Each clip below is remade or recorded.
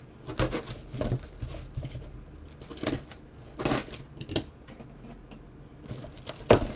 recorded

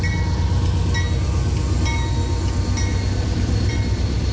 recorded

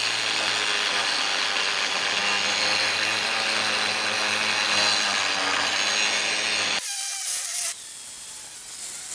recorded